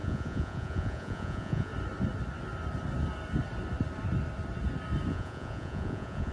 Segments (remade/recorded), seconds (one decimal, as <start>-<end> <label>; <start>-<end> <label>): 0.0-1.7 remade; 1.7-5.1 recorded; 5.1-6.3 remade